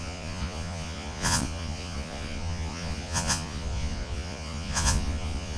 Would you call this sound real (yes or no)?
no